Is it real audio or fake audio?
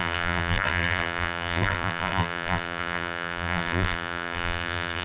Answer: fake